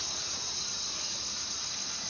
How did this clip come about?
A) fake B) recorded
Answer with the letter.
B